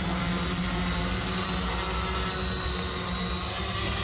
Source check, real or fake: real